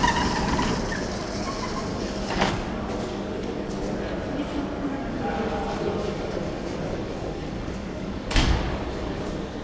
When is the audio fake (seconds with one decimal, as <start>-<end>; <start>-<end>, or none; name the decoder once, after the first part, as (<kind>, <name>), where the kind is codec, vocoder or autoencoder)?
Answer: 1.9-3.7 (codec, DAC); 4.9-9.6